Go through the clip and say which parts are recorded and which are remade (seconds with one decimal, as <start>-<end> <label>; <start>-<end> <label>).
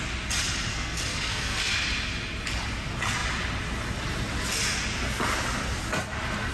0.0-0.7 recorded; 0.7-1.7 remade; 1.7-6.5 recorded